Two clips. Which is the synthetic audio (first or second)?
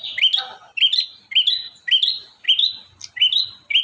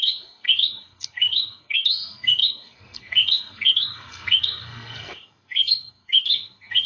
second